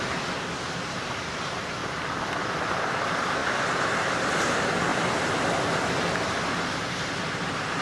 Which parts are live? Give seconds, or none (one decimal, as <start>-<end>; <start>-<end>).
0.0-7.8